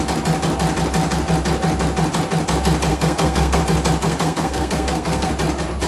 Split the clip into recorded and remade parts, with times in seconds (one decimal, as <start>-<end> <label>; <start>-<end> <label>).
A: 0.0-2.9 recorded; 2.9-3.6 remade; 3.6-4.0 recorded; 4.0-5.3 remade; 5.3-5.9 recorded